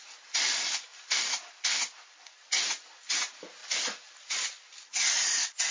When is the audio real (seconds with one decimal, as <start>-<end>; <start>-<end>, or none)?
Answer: 0.0-5.7